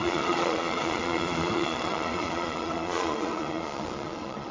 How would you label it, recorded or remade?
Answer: remade